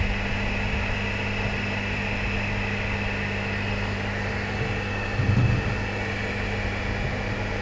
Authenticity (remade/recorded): recorded